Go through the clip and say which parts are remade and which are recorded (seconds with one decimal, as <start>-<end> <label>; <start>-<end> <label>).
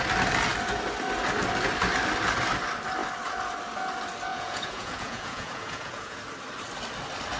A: 0.0-4.3 recorded; 4.3-6.2 remade; 6.2-7.4 recorded